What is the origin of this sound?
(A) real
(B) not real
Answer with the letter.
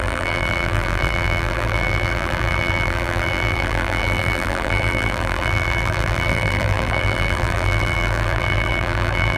B